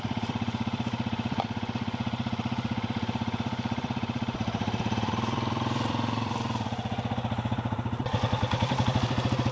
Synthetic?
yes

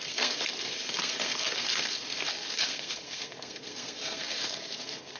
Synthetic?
yes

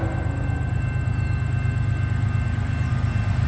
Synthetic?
no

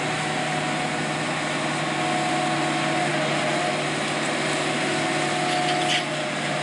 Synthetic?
no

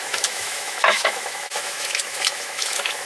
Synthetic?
yes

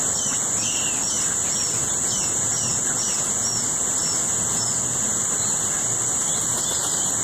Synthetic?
no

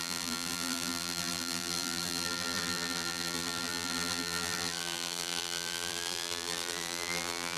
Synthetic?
yes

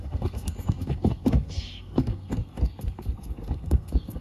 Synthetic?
yes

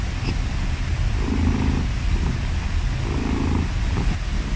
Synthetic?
no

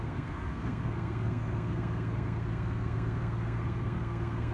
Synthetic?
yes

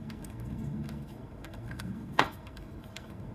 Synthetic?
yes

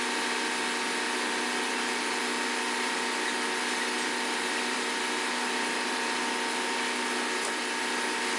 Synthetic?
no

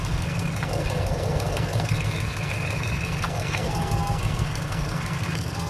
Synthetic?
yes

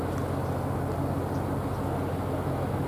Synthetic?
no